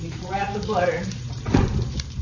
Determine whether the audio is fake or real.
fake